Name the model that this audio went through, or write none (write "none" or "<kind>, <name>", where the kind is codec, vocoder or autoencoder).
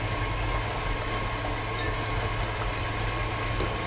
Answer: none